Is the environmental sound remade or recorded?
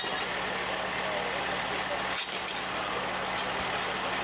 recorded